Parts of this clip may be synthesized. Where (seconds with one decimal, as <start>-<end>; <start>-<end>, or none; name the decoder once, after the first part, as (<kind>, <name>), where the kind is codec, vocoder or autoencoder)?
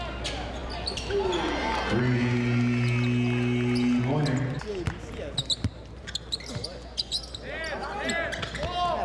6.7-7.2 (vocoder, Vocos)